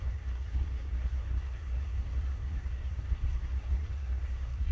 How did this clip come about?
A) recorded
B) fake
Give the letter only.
B